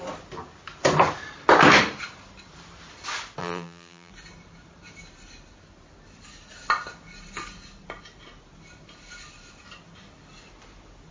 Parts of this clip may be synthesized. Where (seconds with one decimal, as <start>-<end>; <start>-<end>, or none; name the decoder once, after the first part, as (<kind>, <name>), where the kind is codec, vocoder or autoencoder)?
3.4-4.1 (vocoder, BigVGAN v2)